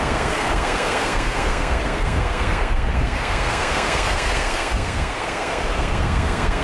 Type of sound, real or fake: fake